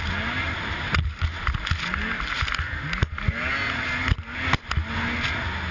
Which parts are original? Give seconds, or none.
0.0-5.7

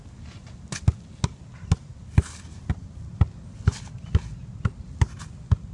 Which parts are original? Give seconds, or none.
0.0-5.7

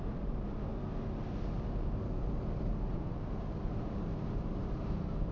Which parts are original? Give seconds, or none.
0.7-2.2

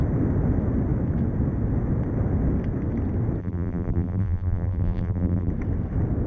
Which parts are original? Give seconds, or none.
0.0-3.4; 5.5-6.3

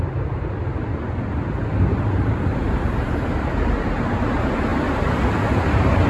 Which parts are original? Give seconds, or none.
0.6-2.2; 4.7-5.6

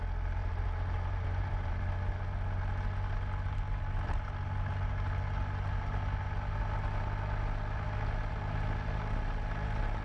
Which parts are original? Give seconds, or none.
0.0-0.4; 1.7-10.0

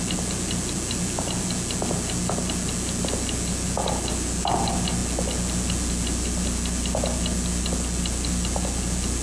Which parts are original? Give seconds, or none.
0.0-9.2

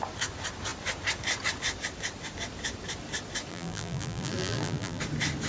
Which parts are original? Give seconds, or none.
0.0-3.5; 5.0-5.5